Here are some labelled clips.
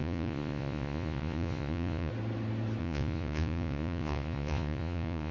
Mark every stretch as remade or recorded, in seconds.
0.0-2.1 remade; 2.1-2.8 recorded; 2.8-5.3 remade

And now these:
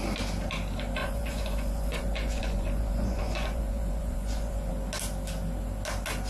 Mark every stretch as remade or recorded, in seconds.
0.0-1.0 recorded; 1.0-4.7 remade; 4.7-6.3 recorded